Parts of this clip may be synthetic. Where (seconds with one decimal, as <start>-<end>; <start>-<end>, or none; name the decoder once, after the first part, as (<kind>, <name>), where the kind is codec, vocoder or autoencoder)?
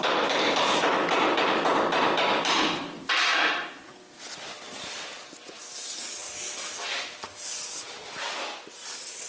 none